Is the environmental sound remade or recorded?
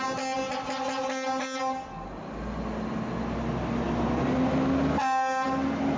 recorded